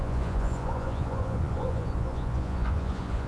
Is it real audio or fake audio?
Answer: fake